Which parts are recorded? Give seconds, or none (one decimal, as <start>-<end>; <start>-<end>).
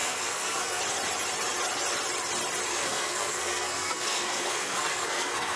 0.8-2.7